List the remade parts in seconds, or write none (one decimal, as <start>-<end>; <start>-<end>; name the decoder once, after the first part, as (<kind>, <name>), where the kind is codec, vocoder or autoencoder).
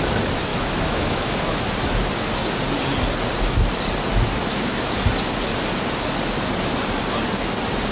0.5-1.6 (autoencoder, DAC-VAE); 4.4-5.0